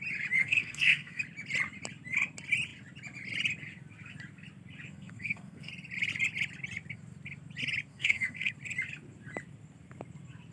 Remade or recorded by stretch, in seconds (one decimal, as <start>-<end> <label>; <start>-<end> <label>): 0.0-0.4 recorded; 0.4-1.2 remade; 1.2-4.9 recorded; 4.9-5.7 remade; 5.7-7.9 recorded; 7.9-8.5 remade; 8.5-10.5 recorded